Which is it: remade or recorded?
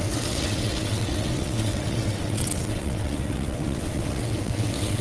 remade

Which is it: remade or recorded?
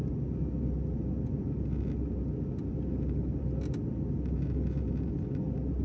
recorded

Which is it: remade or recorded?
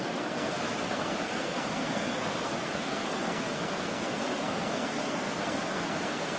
remade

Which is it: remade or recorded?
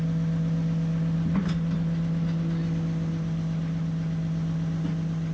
recorded